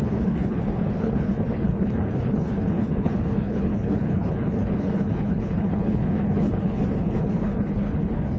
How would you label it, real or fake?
fake